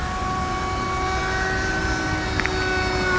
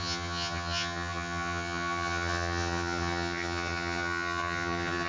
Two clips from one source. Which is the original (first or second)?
first